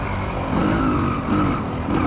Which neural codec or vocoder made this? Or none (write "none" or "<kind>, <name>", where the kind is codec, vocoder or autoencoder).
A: none